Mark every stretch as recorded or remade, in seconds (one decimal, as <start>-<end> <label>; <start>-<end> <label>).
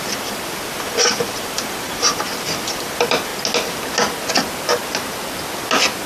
0.0-3.3 remade; 3.3-6.1 recorded